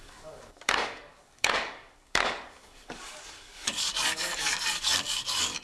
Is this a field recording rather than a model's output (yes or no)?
no